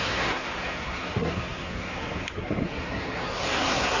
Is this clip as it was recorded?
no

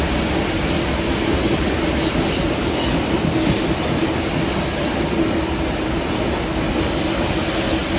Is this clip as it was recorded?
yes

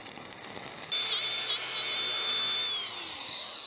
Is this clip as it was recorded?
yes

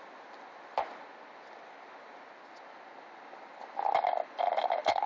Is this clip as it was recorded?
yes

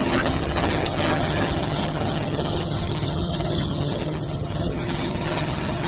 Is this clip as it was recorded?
no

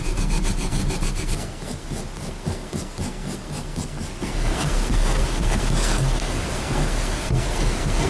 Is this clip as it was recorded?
no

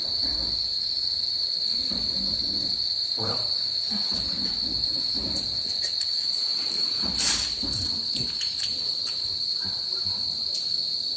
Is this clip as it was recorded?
no